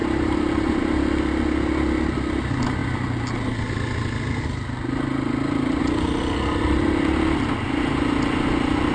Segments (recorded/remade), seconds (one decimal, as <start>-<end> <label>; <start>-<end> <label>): 0.0-0.8 remade; 0.8-8.9 recorded